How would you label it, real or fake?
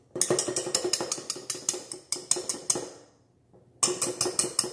real